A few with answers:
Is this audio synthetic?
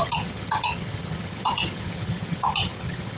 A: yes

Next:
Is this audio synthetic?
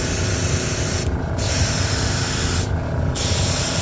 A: no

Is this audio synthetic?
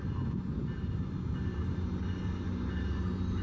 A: no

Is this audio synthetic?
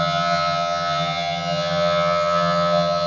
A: yes